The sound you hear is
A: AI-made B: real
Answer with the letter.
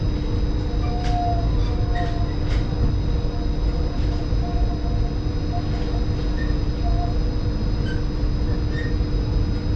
B